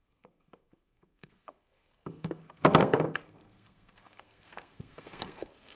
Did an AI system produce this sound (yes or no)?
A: yes